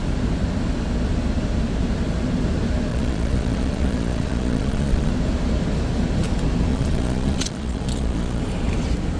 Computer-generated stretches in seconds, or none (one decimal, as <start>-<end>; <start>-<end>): 2.9-5.1; 6.7-8.4